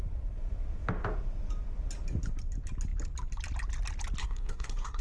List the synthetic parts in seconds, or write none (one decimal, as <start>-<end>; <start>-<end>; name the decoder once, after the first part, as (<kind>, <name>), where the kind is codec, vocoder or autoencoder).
4.2-5.0 (codec, SNAC)